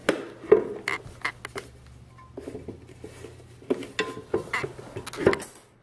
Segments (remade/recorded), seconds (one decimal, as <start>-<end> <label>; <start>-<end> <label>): 0.0-5.8 recorded